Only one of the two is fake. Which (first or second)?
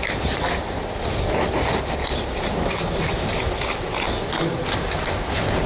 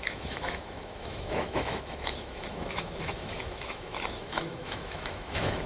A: second